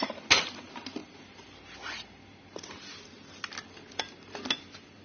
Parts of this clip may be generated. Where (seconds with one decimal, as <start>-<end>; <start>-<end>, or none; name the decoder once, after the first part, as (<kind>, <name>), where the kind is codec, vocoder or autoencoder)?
none